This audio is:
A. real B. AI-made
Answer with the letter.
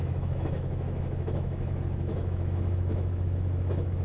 B